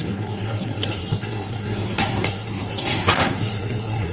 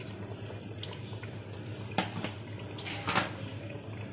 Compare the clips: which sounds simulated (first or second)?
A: first